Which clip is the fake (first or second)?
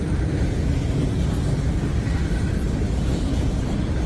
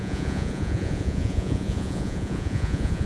second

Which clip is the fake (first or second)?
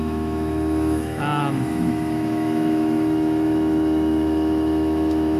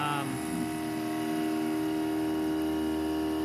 first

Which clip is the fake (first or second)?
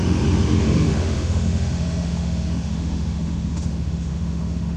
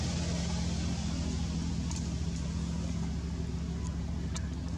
first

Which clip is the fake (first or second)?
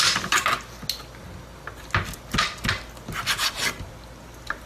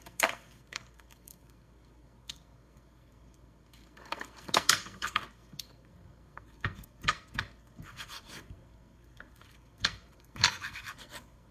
second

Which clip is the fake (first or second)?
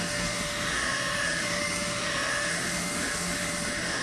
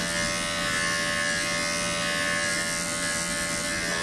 first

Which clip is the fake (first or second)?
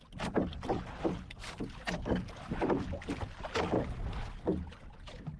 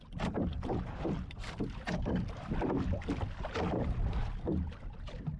second